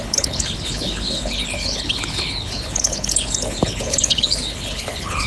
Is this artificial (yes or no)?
yes